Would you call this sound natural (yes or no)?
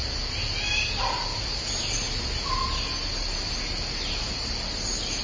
yes